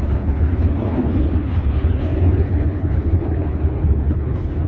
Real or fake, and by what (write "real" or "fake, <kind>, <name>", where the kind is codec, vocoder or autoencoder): fake, codec, HILCodec